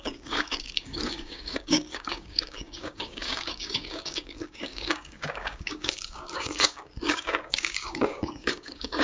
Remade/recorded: remade